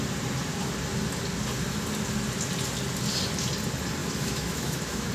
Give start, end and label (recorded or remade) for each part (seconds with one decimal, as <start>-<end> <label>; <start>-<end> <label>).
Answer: 0.0-4.0 recorded; 4.0-5.1 remade